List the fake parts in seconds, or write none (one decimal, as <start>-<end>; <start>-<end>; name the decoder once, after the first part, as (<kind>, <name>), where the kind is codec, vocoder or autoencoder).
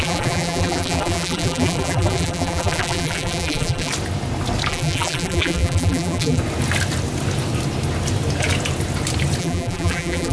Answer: 0.0-3.9 (vocoder, BigVGAN v2); 4.7-6.4; 9.4-10.3